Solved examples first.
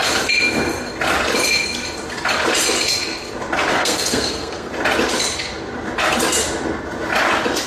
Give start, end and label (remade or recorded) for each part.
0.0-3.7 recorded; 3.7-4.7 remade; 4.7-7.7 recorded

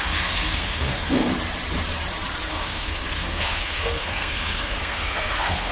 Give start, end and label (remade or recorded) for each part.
0.0-1.3 remade; 1.3-2.5 recorded; 2.5-5.7 remade

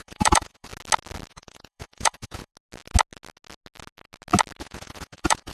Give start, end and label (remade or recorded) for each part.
0.0-0.7 remade; 0.7-1.3 recorded; 1.3-2.5 remade; 2.5-4.6 recorded; 4.6-5.5 remade

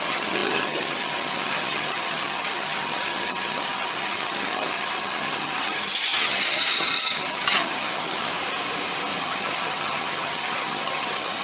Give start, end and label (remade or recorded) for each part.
0.0-8.3 remade; 8.3-9.2 recorded; 9.2-11.4 remade

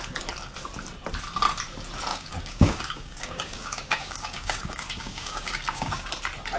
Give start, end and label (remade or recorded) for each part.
0.0-2.1 recorded; 2.1-6.1 remade; 6.1-6.6 recorded

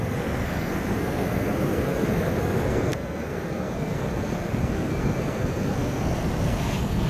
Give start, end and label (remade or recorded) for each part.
0.0-7.1 remade

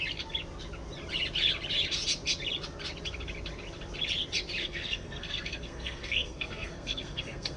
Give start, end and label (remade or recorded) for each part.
0.0-4.6 recorded; 4.6-7.6 remade

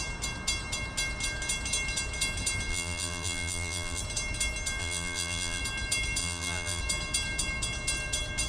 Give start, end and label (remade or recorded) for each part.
0.0-2.7 recorded; 2.7-4.0 remade; 4.0-4.8 recorded; 4.8-5.6 remade; 5.6-6.2 recorded; 6.2-6.8 remade; 6.8-8.5 recorded